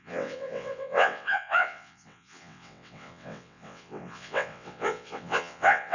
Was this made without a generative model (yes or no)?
no